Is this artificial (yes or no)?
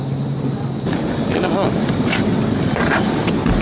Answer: no